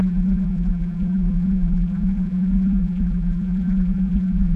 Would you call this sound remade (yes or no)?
yes